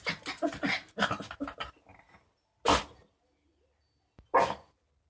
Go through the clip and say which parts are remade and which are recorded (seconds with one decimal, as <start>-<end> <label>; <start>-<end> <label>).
0.0-5.1 recorded